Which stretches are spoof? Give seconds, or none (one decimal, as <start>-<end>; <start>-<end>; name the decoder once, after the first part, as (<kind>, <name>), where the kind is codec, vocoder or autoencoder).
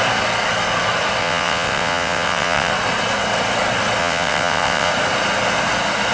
1.2-2.7 (vocoder, WaveNeXt); 4.0-4.9